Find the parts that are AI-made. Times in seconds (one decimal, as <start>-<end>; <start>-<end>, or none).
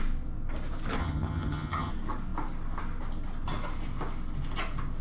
1.0-1.9